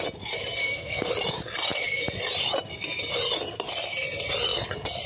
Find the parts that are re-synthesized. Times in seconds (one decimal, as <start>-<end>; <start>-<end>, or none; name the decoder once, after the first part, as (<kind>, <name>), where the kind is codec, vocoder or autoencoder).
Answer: 0.6-1.1 (codec, SNAC)